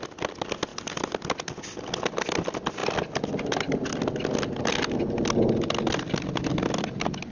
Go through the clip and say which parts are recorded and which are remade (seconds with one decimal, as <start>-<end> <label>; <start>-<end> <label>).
0.0-7.3 recorded